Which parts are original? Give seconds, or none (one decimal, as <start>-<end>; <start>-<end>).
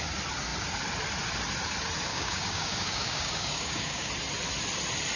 0.0-2.1; 4.1-5.2